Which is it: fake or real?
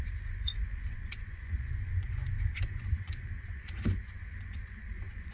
fake